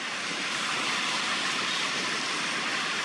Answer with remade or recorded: remade